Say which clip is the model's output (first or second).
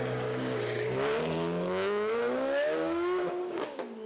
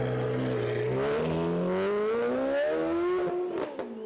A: first